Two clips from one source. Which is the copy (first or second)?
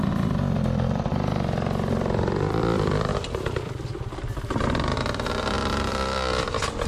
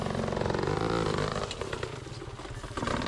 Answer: first